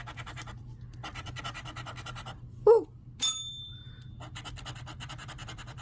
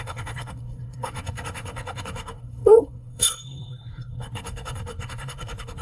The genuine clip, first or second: first